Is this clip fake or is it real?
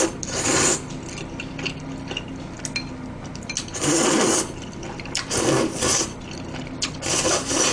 real